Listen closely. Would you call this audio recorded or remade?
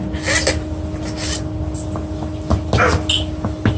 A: recorded